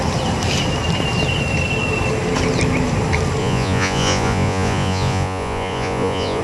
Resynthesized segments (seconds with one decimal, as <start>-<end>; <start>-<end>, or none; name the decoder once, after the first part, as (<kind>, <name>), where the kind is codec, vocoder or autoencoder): 3.4-6.4 (vocoder, Vocos)